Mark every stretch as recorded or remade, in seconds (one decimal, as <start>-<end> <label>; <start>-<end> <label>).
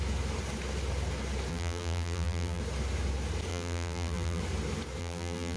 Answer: 0.0-1.5 recorded; 1.5-2.6 remade; 2.6-3.5 recorded; 3.5-4.4 remade; 4.4-5.0 recorded; 5.0-5.6 remade